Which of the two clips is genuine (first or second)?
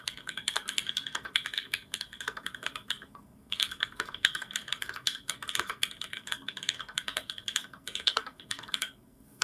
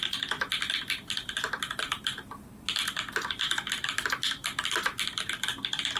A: second